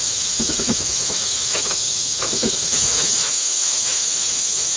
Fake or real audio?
fake